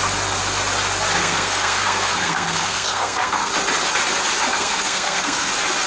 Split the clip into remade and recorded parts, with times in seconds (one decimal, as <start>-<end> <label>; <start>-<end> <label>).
0.0-1.2 recorded; 1.2-3.5 remade; 3.5-4.5 recorded; 4.5-5.5 remade; 5.5-5.9 recorded